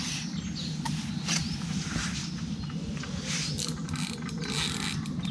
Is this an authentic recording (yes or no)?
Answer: yes